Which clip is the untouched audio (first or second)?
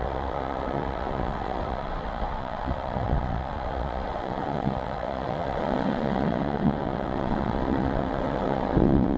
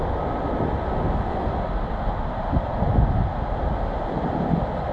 second